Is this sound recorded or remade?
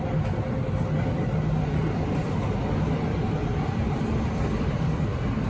recorded